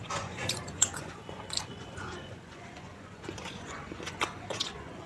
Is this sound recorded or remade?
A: remade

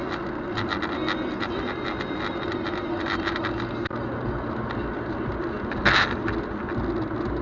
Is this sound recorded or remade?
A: recorded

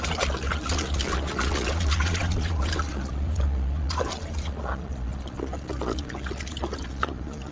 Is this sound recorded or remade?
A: remade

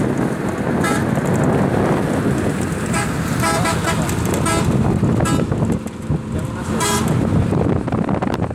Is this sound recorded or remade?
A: recorded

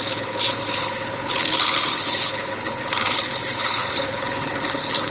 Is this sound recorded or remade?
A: remade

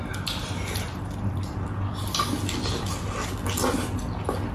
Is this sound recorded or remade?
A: recorded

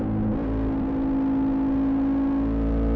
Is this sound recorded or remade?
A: recorded